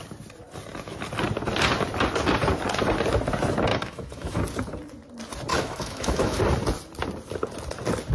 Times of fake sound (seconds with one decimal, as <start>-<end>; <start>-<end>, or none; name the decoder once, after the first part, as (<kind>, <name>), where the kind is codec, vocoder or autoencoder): 3.7-4.4 (autoencoder, DAC-VAE); 5.5-6.4